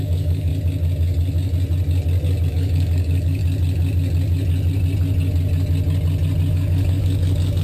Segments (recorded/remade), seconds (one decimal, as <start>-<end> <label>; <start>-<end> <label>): 0.0-0.5 remade; 0.5-2.5 recorded; 2.5-3.4 remade; 3.4-6.5 recorded; 6.5-7.6 remade